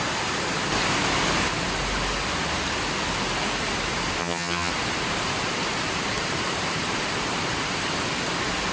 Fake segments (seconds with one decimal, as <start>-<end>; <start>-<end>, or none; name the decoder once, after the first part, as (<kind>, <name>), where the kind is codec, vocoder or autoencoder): 4.2-4.7 (vocoder, HiFi-GAN)